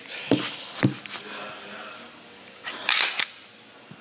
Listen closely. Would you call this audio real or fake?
real